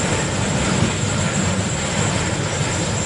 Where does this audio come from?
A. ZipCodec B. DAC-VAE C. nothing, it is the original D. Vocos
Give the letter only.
C